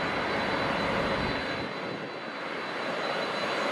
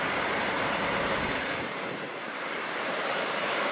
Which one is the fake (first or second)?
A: second